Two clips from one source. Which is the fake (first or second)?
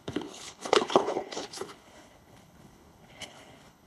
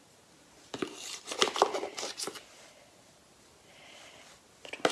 first